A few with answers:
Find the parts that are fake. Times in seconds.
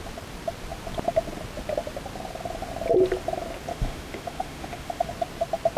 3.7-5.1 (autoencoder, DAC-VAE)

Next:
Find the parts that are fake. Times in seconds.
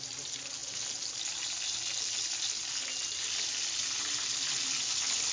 none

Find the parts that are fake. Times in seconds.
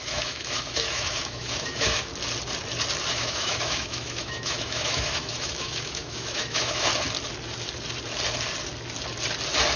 0.0-2.1 (autoencoder, DAC-VAE); 3.1-6.9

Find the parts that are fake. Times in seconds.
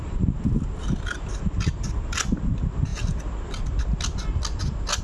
none